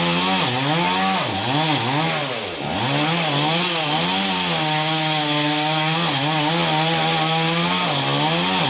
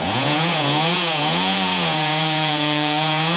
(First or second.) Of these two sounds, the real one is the first